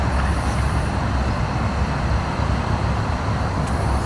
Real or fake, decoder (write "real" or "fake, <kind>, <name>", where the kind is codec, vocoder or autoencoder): fake, vocoder, BigVGAN v2